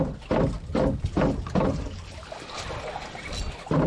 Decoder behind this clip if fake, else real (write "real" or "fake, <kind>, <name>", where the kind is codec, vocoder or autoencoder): real